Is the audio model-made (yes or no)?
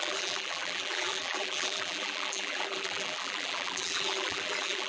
yes